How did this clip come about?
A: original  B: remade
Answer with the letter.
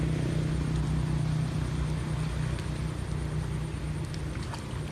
A